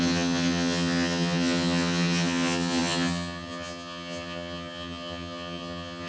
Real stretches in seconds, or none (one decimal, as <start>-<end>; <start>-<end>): none